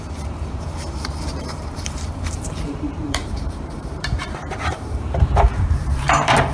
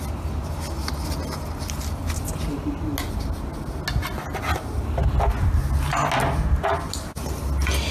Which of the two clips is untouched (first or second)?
second